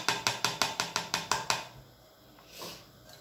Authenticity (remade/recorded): recorded